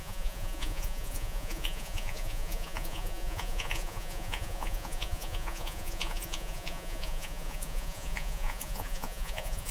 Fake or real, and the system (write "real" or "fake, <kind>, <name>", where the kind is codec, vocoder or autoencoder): fake, vocoder, Vocos